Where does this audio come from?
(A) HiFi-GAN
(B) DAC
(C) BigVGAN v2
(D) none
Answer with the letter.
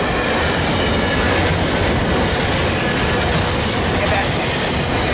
D